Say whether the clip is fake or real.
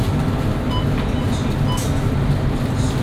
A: real